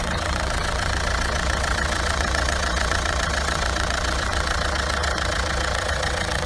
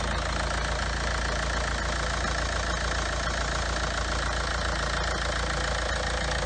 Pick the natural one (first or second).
second